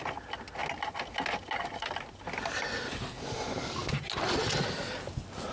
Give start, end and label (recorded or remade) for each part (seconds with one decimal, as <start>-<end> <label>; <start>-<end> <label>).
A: 0.0-5.5 recorded

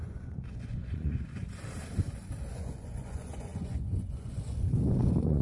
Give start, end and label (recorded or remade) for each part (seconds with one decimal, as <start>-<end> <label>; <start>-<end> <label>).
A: 0.0-1.4 remade; 1.4-2.5 recorded; 2.5-5.4 remade

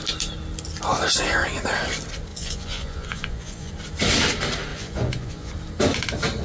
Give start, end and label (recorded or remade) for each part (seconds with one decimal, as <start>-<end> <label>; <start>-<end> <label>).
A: 0.0-2.3 recorded; 2.3-3.7 remade; 3.7-4.7 recorded; 4.7-5.5 remade; 5.5-6.4 recorded

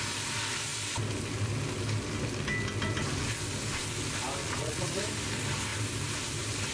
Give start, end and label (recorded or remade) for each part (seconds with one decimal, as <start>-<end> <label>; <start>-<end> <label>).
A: 0.0-4.4 recorded; 4.4-5.0 remade; 5.0-6.7 recorded